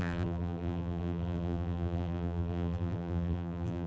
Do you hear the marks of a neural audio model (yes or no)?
yes